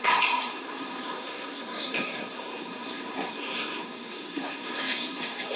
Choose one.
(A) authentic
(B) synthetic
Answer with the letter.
B